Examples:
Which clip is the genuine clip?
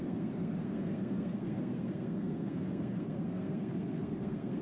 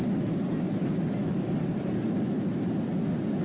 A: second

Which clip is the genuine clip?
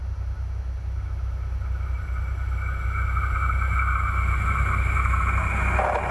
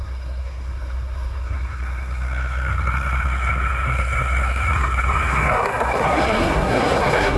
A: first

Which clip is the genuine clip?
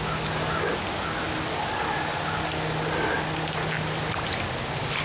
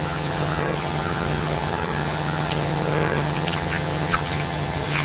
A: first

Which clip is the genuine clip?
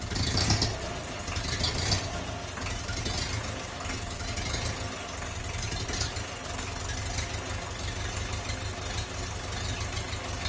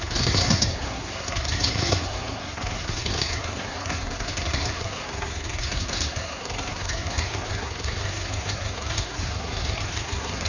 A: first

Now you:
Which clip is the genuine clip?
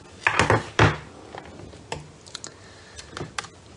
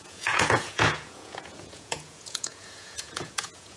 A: first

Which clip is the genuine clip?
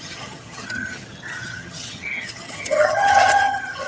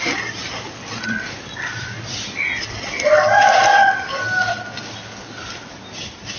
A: second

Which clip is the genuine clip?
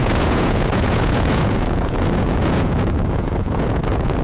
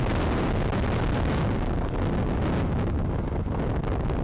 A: second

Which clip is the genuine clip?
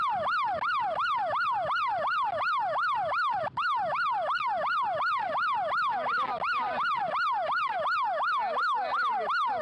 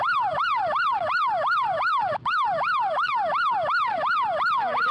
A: first